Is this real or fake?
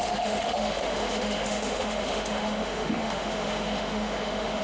fake